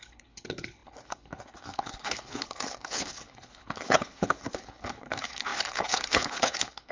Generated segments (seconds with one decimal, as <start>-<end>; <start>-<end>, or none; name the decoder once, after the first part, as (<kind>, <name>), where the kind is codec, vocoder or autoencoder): 0.0-6.9 (codec, HILCodec)